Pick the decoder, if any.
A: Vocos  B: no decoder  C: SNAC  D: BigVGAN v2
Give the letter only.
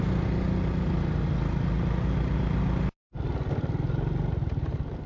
B